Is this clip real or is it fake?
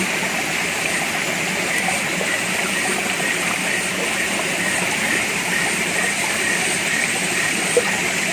real